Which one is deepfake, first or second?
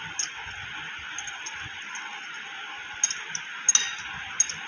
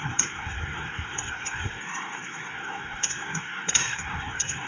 second